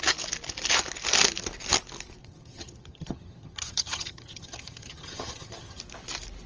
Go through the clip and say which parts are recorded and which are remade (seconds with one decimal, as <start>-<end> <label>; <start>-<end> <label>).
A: 0.0-2.2 recorded; 2.2-5.8 remade; 5.8-6.5 recorded

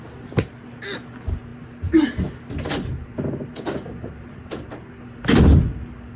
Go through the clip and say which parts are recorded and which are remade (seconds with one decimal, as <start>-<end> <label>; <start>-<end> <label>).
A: 0.0-6.2 recorded

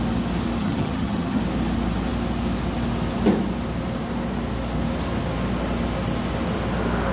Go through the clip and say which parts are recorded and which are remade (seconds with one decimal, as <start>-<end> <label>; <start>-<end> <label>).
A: 0.0-0.6 recorded; 0.6-1.4 remade; 1.4-7.1 recorded

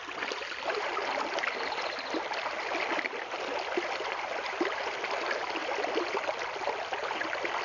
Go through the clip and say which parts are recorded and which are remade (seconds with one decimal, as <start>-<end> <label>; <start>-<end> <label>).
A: 0.0-7.6 recorded

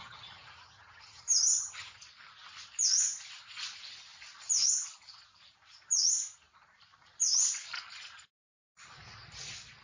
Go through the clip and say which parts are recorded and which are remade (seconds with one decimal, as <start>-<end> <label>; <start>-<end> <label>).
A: 0.0-2.0 remade; 2.0-9.8 recorded